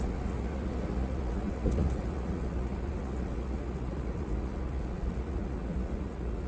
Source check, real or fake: fake